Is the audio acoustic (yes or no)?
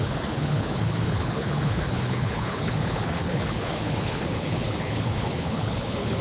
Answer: no